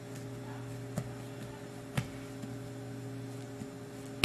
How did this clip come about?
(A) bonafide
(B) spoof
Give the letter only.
A